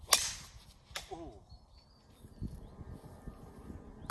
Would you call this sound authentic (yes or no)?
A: yes